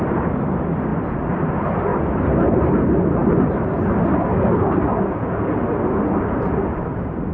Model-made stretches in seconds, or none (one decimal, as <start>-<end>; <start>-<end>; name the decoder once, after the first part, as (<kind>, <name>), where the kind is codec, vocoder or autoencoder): none